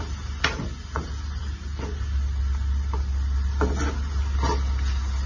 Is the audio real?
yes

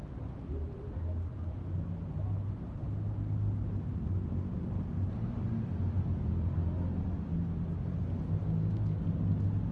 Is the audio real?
yes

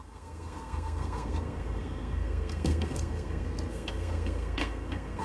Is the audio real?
no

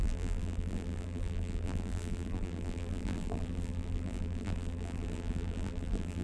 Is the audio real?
no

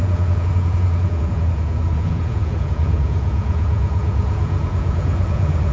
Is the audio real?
no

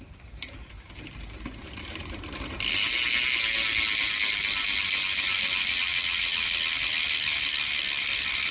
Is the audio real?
yes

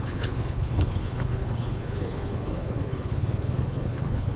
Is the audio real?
no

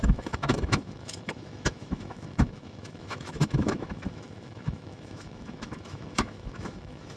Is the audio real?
no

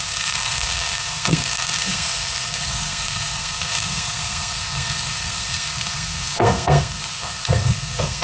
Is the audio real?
no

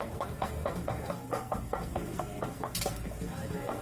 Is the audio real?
no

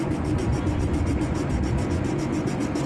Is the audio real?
no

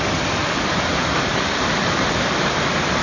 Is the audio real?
yes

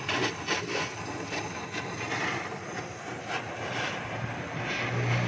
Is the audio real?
yes